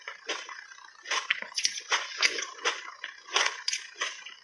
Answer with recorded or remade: remade